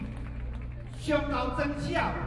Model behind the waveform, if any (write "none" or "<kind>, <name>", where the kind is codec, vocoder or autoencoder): none